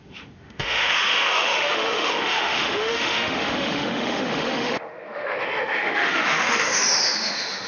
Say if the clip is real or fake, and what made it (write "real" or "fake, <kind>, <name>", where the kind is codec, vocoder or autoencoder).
fake, autoencoder, DAC-VAE